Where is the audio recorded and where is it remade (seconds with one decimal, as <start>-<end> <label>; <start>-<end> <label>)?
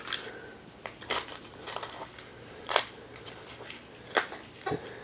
0.0-2.3 recorded; 2.3-3.3 remade; 3.3-5.0 recorded